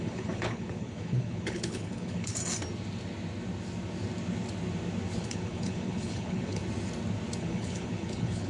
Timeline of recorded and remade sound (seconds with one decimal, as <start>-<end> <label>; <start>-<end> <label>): 0.0-2.4 remade; 2.4-5.2 recorded; 5.2-6.6 remade; 6.6-7.4 recorded; 7.4-8.5 remade